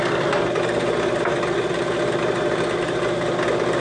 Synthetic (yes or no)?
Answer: no